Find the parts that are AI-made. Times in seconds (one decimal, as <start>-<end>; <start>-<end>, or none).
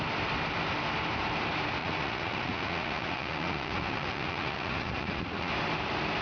1.8-5.5